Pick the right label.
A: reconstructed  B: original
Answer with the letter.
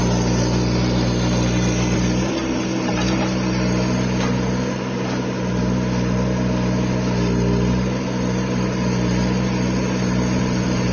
B